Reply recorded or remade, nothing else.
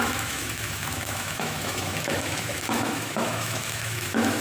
remade